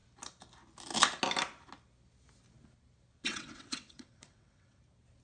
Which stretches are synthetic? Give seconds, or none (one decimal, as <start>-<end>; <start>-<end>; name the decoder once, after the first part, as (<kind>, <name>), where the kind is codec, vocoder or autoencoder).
3.2-4.8 (vocoder, WaveNeXt)